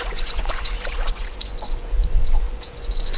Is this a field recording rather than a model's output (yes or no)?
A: no